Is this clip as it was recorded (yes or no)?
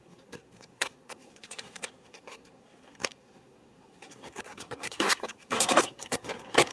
no